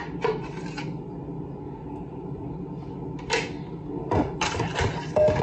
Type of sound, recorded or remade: recorded